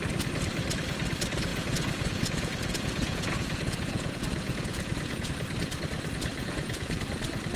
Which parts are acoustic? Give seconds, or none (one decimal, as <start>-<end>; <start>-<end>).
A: 0.0-1.5; 5.3-6.3; 7.0-7.6